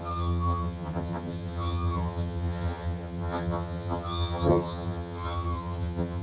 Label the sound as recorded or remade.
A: remade